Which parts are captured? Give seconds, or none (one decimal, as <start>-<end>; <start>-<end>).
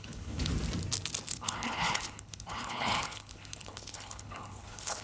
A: 0.5-1.3